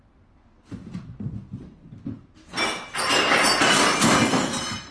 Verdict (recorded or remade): recorded